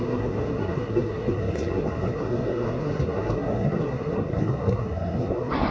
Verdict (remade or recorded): remade